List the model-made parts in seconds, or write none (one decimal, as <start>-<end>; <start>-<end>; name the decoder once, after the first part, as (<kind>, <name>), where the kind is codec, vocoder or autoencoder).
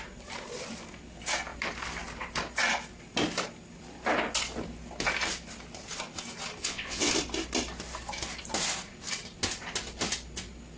6.6-7.1 (vocoder, WaveNeXt)